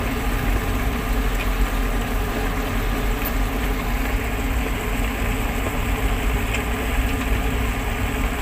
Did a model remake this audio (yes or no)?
no